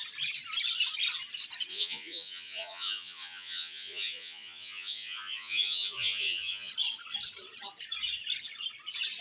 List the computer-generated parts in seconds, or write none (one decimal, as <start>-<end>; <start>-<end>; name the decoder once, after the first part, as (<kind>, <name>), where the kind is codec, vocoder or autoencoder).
1.7-6.7 (vocoder, Vocos)